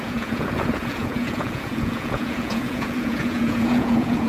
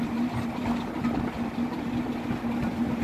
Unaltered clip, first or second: second